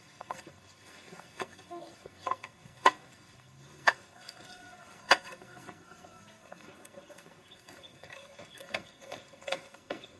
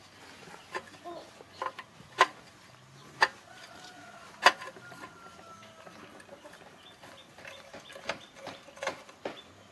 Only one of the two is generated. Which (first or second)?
first